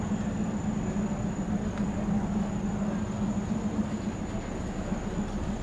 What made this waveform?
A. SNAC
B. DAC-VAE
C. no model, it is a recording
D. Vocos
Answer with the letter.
C